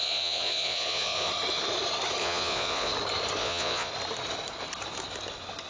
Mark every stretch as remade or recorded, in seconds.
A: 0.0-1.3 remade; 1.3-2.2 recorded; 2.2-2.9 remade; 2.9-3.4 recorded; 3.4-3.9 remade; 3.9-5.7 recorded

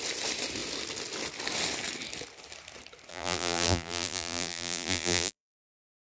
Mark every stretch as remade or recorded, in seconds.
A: 0.0-3.1 recorded; 3.1-5.6 remade; 5.6-6.1 recorded

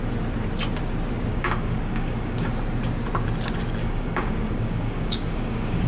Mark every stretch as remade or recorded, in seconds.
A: 0.0-1.3 recorded; 1.3-2.5 remade; 2.5-3.8 recorded; 3.8-5.9 remade

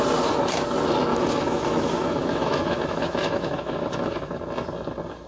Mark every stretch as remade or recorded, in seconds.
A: 0.0-1.1 recorded; 1.1-4.3 remade; 4.3-5.3 recorded

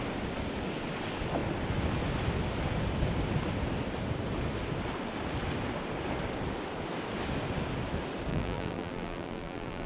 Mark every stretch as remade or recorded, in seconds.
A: 0.0-8.3 recorded; 8.3-9.9 remade